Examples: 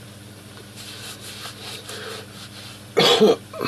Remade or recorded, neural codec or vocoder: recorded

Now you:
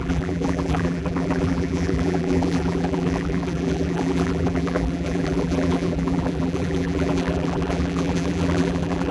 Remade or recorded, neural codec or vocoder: remade, vocoder, BigVGAN v2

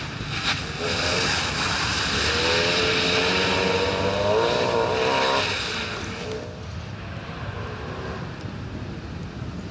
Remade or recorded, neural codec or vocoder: recorded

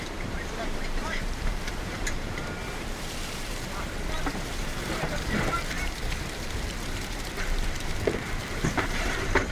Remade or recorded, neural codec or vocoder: remade, vocoder, BigVGAN v2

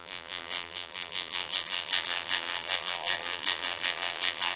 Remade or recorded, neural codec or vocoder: remade, vocoder, BigVGAN v2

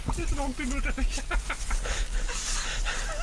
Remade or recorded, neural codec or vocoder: recorded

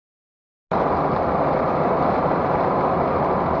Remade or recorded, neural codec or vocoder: recorded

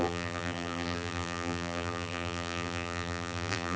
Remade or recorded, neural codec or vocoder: remade, vocoder, BigVGAN v2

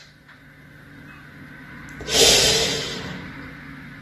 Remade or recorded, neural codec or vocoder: recorded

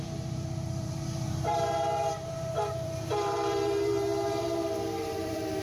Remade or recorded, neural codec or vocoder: remade, vocoder, BigVGAN v2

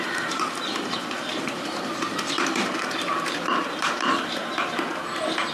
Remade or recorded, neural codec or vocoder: remade, vocoder, BigVGAN v2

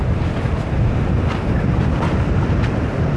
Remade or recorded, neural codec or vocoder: remade, vocoder, BigVGAN v2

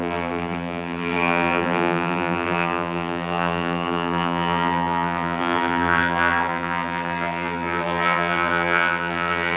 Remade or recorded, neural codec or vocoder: remade, vocoder, BigVGAN v2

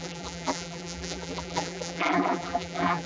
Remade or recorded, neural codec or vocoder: remade, vocoder, BigVGAN v2